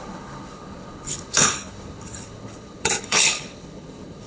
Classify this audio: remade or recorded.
remade